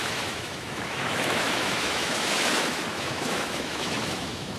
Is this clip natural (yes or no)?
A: no